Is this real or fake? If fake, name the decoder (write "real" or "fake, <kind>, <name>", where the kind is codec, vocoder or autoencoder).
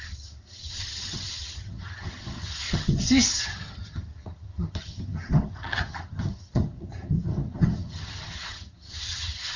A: fake, vocoder, HiFi-GAN